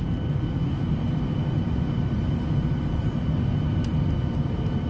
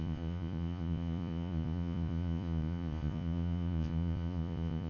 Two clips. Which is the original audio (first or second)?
first